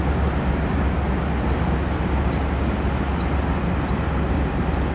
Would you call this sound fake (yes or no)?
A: no